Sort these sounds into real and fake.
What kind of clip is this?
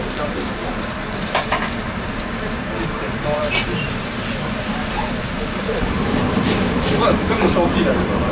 fake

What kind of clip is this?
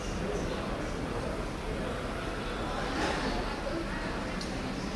real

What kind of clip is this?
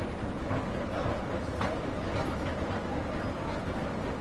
real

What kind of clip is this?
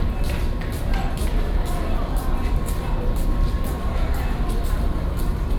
real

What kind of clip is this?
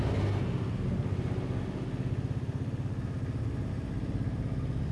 real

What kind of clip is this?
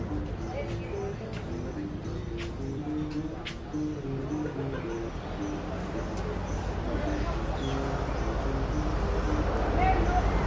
real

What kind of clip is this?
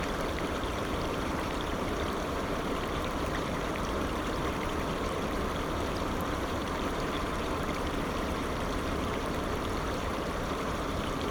fake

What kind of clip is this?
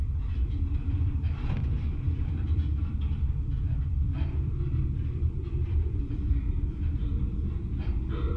fake